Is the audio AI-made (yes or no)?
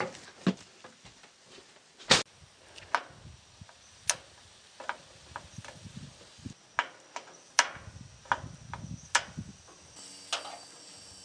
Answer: no